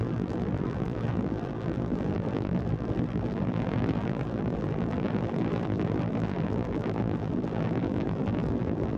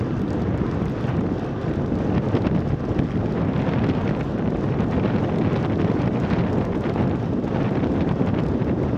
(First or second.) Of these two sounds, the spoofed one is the first